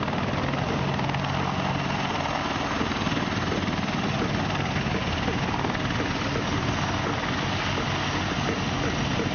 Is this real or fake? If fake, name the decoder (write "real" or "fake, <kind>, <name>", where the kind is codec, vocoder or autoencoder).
real